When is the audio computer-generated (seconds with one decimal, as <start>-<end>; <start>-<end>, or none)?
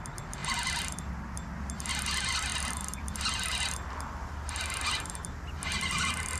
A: none